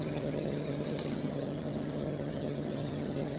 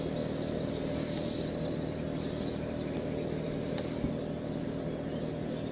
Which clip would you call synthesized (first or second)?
first